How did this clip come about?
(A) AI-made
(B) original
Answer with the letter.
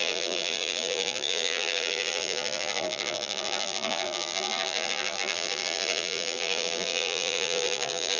A